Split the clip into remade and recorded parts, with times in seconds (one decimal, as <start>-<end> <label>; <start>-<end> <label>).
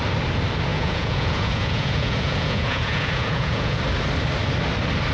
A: 0.0-0.7 recorded; 0.7-3.8 remade; 3.8-5.1 recorded